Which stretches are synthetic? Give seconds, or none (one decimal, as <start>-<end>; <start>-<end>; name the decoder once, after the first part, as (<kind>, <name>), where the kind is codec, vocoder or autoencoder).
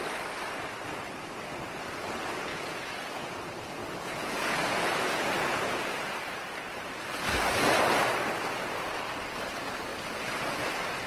2.5-3.4 (vocoder, Vocos); 3.8-6.0